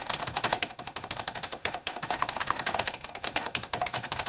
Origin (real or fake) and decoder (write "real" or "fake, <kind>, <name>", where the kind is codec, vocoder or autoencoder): fake, autoencoder, DAC-VAE